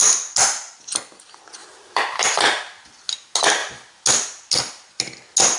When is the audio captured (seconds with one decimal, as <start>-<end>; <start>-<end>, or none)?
0.0-1.6; 2.4-5.6